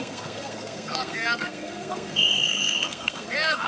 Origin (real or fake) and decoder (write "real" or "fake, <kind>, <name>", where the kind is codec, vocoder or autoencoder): fake, codec, SNAC